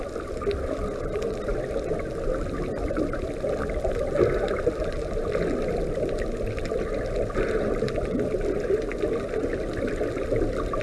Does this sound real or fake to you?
real